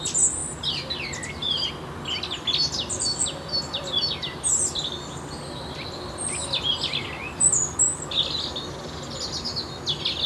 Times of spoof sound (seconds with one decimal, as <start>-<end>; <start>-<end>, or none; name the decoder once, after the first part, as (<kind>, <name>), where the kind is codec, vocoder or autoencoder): none